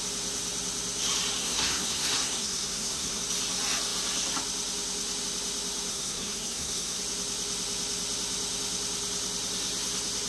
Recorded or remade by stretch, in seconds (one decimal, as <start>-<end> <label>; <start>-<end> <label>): 0.0-1.4 recorded; 1.4-3.2 remade; 3.2-5.9 recorded; 5.9-7.0 remade; 7.0-10.3 recorded